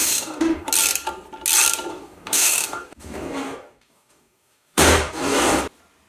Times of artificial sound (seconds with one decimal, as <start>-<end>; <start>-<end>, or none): 0.0-0.7; 1.9-5.6